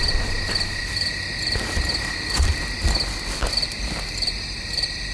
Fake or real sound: real